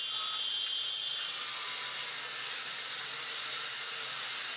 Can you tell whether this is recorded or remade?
recorded